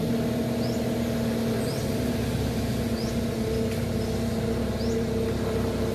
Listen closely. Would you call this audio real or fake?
real